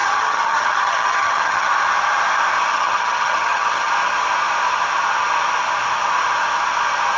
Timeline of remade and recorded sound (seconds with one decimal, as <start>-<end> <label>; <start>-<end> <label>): 0.0-1.7 remade; 1.7-2.7 recorded; 2.7-3.9 remade; 3.9-7.2 recorded